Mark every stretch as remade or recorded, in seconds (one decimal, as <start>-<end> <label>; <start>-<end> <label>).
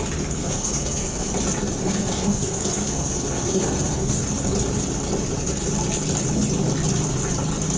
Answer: 0.0-0.4 recorded; 0.4-1.3 remade; 1.3-1.8 recorded; 1.8-4.2 remade; 4.2-7.8 recorded